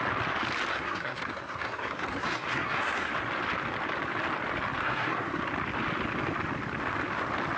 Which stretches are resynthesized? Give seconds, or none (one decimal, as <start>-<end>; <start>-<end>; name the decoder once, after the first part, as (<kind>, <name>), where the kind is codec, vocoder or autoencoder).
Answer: 0.7-3.1 (codec, SNAC); 4.8-5.4